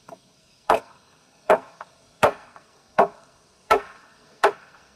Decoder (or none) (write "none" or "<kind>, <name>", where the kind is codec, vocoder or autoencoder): codec, SNAC